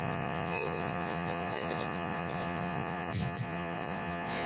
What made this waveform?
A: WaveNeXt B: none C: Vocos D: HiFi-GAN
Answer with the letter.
C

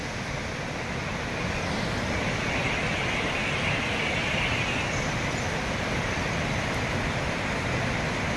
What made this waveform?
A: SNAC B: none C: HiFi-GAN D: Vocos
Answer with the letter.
B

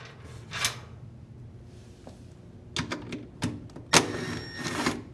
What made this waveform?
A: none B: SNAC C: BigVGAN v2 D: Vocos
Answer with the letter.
A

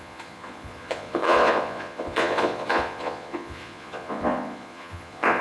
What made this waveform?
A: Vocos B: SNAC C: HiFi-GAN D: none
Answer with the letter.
A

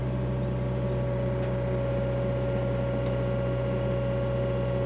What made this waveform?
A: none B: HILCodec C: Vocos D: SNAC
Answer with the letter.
A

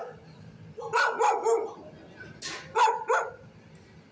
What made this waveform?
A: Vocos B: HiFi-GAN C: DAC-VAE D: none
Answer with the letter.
D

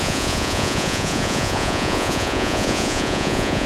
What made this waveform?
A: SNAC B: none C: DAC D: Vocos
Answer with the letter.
D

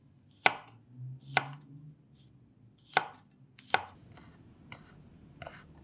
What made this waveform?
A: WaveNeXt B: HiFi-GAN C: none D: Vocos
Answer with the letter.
C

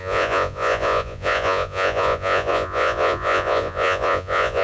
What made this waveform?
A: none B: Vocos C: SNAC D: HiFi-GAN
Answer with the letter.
B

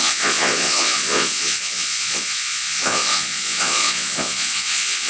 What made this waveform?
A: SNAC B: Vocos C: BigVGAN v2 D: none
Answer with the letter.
B